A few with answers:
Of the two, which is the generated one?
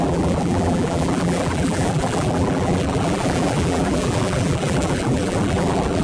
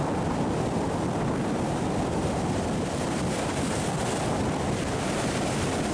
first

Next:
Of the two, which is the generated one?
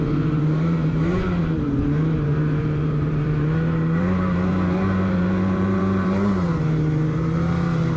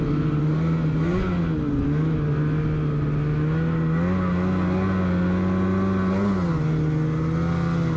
first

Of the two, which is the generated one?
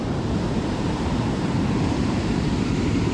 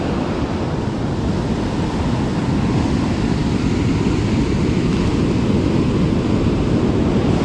first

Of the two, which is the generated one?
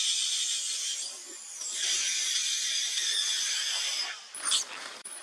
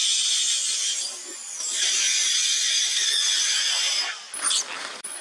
first